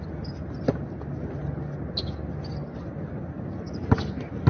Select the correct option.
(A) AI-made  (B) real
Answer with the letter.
B